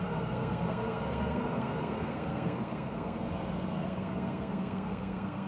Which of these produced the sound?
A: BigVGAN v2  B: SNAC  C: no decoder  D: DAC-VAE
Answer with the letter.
B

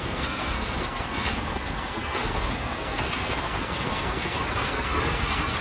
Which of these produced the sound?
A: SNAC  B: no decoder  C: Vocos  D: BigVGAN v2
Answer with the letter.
A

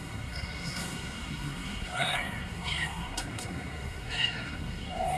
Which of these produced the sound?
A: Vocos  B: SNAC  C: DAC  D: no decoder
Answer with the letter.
B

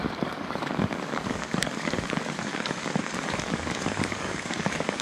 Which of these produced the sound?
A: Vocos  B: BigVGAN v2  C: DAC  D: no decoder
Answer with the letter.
C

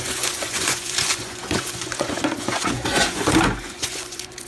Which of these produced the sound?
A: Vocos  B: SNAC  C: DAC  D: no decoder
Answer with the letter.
A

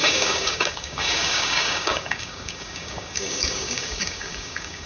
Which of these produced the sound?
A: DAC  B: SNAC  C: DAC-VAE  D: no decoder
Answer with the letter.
A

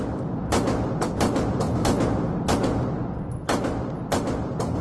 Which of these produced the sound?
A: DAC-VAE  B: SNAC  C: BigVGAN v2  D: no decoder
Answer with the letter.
D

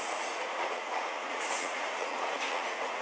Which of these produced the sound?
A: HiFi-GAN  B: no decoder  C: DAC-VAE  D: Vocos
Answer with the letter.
D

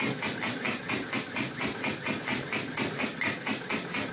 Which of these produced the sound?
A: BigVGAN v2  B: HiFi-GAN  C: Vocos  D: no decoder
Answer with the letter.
D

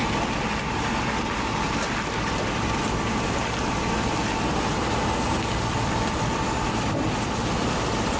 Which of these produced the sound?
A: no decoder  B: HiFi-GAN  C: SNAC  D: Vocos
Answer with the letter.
A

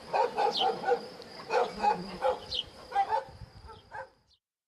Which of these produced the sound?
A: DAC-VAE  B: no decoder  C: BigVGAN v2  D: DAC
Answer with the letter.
C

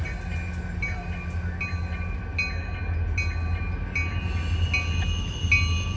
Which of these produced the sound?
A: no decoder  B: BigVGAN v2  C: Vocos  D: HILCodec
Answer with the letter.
A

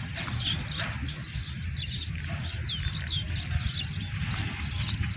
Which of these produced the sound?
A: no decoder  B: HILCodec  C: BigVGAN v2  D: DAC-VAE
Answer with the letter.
A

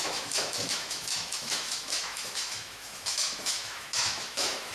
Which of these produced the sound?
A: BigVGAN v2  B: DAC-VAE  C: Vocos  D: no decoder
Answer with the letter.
B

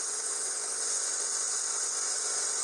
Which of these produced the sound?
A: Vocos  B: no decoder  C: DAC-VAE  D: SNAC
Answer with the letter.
A